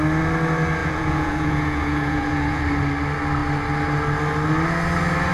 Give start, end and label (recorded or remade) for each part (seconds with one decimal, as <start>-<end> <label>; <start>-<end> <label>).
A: 0.0-0.8 recorded; 0.8-2.6 remade; 2.6-5.3 recorded